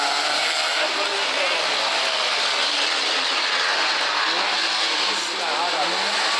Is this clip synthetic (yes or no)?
no